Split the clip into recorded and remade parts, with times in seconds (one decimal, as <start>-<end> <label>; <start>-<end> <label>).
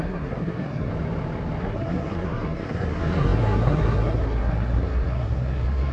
0.0-0.9 remade; 0.9-1.6 recorded; 1.6-5.9 remade